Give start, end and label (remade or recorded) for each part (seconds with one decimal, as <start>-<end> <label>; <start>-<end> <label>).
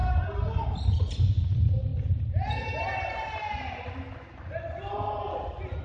0.0-5.8 recorded